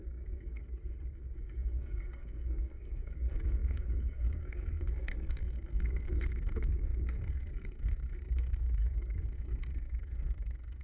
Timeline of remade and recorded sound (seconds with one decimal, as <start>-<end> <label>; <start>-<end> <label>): 0.0-0.6 remade; 0.6-1.1 recorded; 1.1-10.8 remade